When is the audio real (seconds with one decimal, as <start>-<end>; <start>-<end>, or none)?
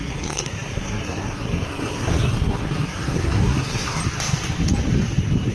4.0-5.5